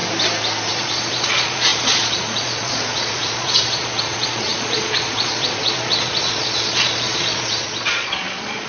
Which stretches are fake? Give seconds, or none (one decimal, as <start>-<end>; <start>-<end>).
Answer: 0.7-8.7